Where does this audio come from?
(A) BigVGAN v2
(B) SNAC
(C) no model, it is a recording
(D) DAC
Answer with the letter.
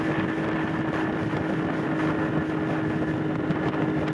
C